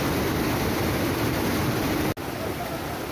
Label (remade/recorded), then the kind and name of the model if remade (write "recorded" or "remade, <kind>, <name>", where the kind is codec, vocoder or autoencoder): recorded